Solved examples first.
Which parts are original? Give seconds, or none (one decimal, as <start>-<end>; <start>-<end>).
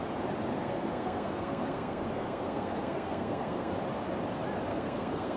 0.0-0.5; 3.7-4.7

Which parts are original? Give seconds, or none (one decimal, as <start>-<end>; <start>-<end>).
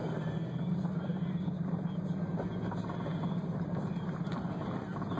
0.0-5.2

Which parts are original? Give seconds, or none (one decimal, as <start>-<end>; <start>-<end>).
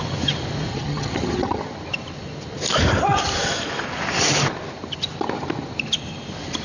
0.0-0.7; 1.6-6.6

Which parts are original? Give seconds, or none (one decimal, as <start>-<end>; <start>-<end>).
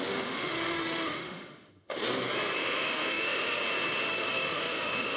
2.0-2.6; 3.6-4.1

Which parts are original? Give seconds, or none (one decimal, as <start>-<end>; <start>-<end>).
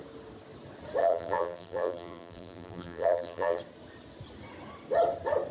0.0-1.0; 3.6-5.5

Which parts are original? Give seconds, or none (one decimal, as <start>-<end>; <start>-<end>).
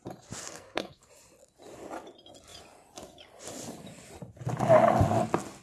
0.0-0.4; 1.1-5.6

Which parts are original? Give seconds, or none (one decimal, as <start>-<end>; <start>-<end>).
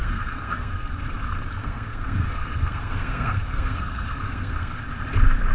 0.9-1.6; 4.8-5.5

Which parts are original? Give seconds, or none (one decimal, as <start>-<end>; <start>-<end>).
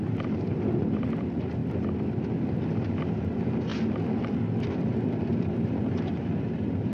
1.6-2.5; 3.7-4.8